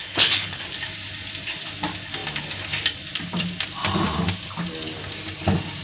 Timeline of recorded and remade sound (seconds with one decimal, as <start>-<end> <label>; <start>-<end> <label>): 0.0-0.6 remade; 0.6-5.8 recorded